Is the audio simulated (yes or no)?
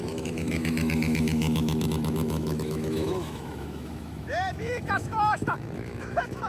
yes